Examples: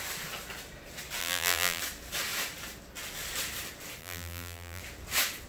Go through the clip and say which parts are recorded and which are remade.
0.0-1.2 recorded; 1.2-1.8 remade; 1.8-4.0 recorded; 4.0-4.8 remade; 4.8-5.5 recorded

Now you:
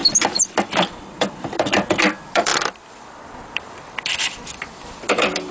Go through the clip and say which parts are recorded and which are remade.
0.0-5.5 remade

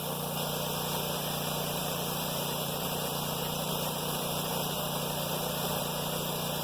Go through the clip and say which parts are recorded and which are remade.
0.0-1.8 recorded; 1.8-5.8 remade; 5.8-6.6 recorded

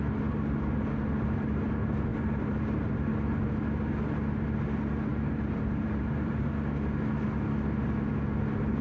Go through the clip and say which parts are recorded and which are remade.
0.0-2.1 recorded; 2.1-3.1 remade; 3.1-5.1 recorded; 5.1-6.5 remade; 6.5-8.8 recorded